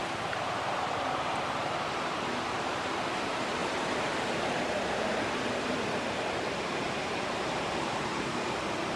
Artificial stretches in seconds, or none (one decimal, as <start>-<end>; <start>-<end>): 3.6-8.5